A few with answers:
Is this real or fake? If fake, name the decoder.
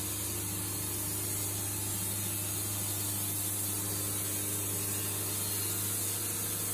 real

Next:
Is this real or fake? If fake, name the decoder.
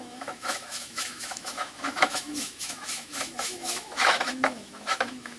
fake, autoencoder, DAC-VAE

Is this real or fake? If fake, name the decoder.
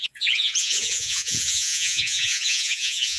fake, vocoder, Vocos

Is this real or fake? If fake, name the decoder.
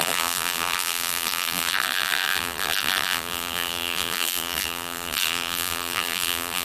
fake, vocoder, BigVGAN v2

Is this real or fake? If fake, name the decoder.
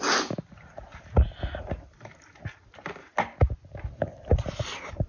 real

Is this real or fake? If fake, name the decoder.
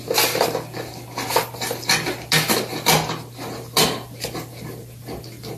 real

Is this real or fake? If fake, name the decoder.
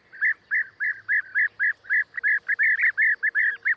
real